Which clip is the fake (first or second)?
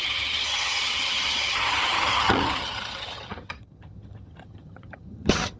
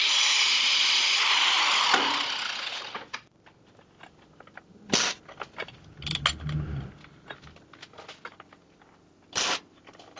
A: first